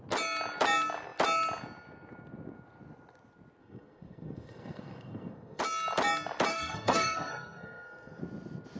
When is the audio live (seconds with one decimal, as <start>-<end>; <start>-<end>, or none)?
0.0-3.6; 5.6-6.5; 8.2-8.8